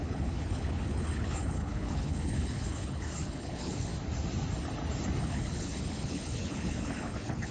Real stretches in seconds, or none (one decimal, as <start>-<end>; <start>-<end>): 3.9-5.2